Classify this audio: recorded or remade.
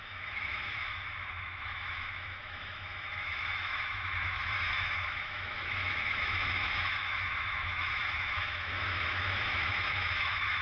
remade